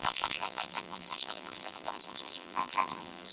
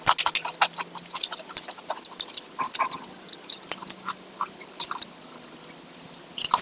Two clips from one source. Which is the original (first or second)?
second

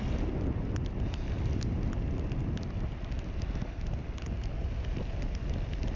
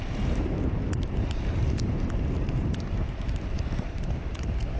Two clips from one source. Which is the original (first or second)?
first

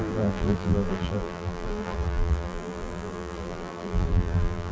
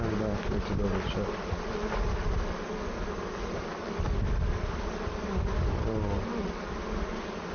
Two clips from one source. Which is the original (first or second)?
second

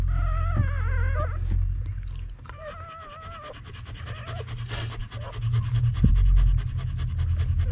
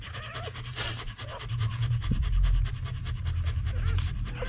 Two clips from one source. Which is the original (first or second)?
first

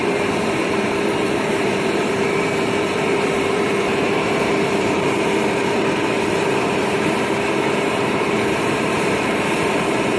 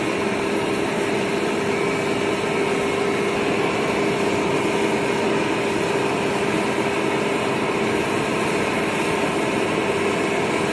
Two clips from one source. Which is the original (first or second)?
second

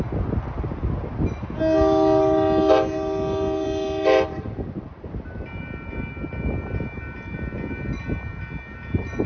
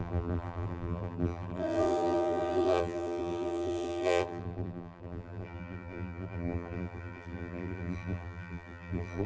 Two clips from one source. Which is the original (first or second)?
first